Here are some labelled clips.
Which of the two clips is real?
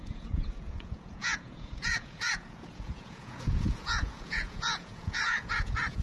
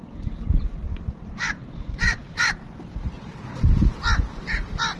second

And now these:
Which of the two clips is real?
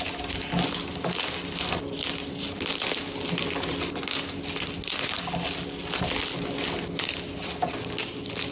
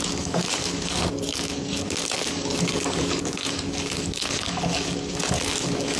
first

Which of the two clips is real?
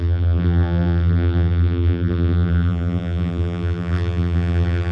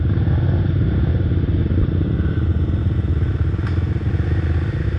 second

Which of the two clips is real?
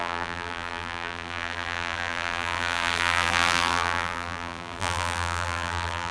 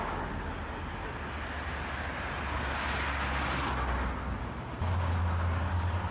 second